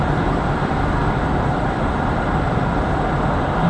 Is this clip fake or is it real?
fake